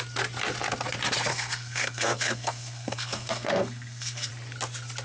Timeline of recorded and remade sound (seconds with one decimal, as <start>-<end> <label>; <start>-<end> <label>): 0.0-1.3 recorded; 1.3-4.3 remade; 4.3-5.0 recorded